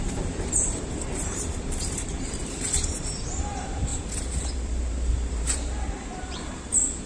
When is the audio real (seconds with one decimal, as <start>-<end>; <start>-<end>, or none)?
none